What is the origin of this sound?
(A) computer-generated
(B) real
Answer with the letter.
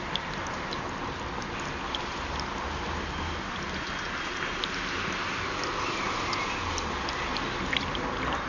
B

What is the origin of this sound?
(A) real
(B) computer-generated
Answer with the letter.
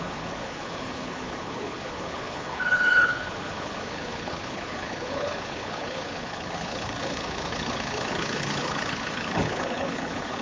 B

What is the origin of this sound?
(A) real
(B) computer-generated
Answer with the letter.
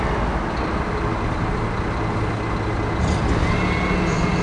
A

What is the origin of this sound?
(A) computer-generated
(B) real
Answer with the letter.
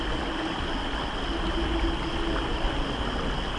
B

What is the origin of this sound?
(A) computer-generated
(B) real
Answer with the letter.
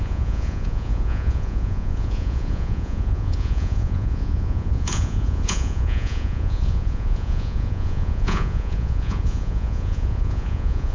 A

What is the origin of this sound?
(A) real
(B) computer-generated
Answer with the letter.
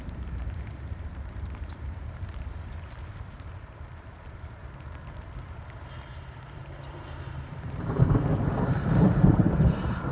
B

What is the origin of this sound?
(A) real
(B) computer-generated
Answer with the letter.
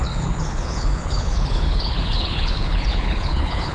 B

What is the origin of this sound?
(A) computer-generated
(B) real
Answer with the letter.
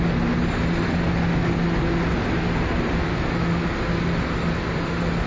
B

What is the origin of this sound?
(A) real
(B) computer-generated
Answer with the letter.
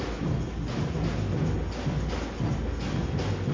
A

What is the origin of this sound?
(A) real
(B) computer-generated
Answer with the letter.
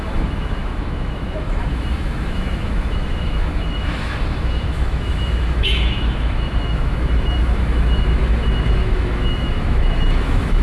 B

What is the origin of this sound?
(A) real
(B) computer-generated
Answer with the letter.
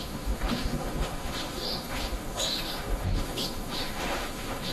B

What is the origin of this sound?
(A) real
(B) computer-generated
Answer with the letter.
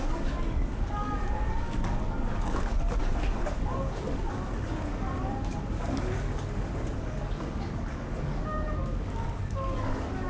B